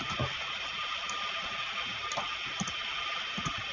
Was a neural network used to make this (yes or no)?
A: no